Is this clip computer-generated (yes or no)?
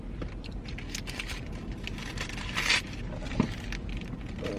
no